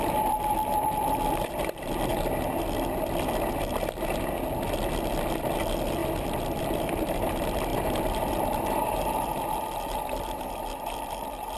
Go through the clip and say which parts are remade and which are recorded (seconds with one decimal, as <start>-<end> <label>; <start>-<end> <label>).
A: 0.0-2.1 remade; 2.1-5.1 recorded; 5.1-6.0 remade; 6.0-6.6 recorded; 6.6-11.6 remade